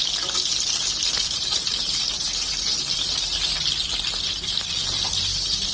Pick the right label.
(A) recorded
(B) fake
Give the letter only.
A